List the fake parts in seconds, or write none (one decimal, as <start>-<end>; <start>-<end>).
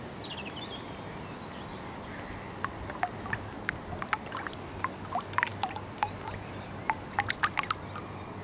none